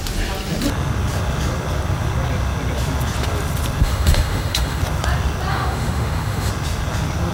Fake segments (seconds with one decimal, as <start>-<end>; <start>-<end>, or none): 3.8-4.8; 5.5-6.5